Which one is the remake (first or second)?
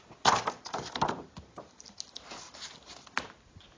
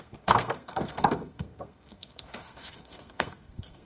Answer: second